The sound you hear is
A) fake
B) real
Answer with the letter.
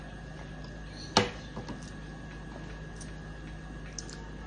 B